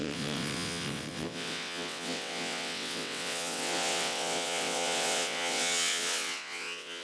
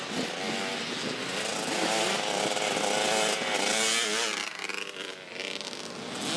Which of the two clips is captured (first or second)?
second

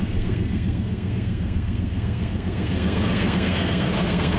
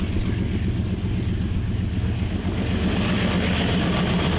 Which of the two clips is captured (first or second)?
second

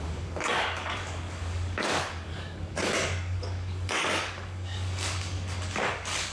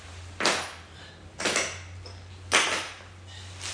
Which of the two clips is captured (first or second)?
second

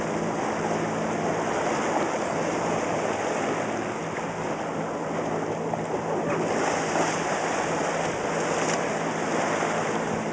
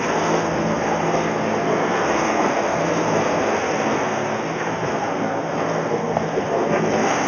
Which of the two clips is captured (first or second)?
first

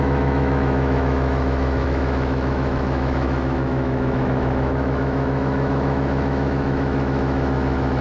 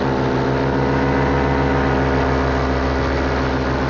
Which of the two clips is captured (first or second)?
second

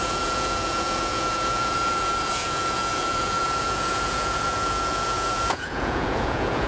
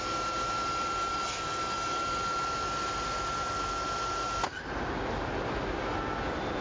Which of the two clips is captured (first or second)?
second